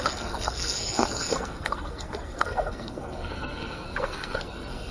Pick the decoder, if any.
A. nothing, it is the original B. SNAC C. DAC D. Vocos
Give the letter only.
B